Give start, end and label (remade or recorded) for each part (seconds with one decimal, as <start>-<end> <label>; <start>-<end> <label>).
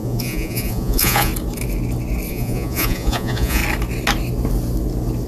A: 0.0-1.3 remade; 1.3-2.3 recorded; 2.3-3.6 remade; 3.6-5.3 recorded